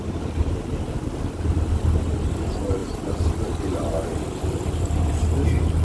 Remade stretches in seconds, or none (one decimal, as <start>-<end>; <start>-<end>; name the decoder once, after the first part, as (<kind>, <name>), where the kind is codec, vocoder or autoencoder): none